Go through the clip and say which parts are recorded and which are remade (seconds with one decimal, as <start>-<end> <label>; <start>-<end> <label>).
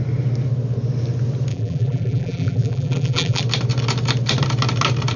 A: 0.0-1.5 recorded; 1.5-3.4 remade; 3.4-5.2 recorded